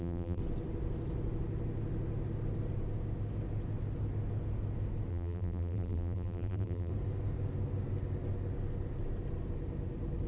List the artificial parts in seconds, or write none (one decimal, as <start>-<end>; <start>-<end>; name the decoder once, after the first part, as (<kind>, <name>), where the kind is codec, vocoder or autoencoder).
0.0-0.4 (vocoder, BigVGAN v2); 5.1-6.9